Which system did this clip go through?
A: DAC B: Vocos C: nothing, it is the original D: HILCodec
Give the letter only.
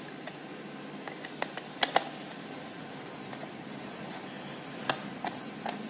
C